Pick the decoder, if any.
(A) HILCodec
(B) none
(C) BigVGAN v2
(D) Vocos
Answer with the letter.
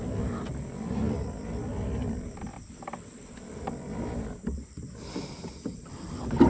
B